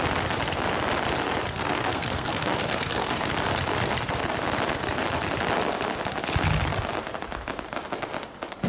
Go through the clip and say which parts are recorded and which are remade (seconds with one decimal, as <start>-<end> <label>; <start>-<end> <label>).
0.0-1.6 recorded; 1.6-3.3 remade; 3.3-8.7 recorded